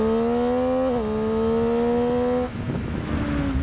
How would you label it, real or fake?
real